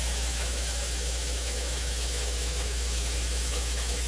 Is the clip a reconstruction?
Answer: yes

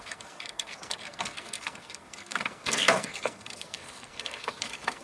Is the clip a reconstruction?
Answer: yes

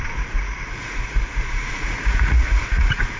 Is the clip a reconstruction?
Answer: yes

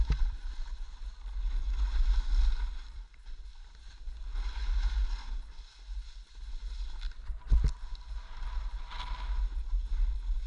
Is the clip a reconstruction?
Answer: no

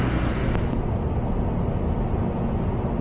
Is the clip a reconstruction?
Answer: no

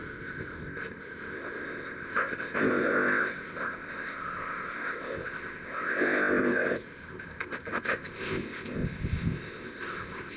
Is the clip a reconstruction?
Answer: yes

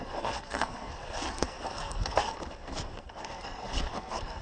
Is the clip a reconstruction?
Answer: yes